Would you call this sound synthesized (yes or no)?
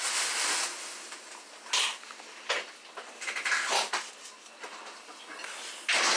no